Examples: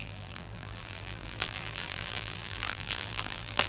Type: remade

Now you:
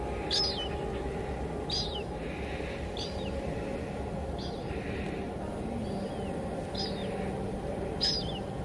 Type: recorded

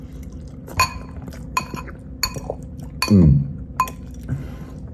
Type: recorded